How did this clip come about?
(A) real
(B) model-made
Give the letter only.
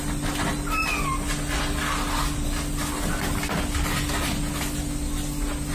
A